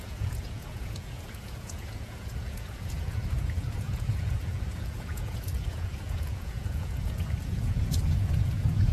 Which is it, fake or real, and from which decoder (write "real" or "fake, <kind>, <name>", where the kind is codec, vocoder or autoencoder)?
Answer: fake, vocoder, Vocos